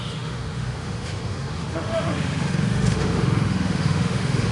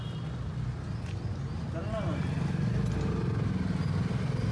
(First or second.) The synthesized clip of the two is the first